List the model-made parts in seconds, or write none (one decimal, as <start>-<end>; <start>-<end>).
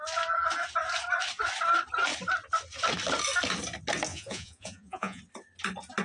4.1-5.2